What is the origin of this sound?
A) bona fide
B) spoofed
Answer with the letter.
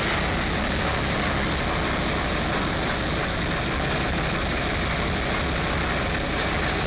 A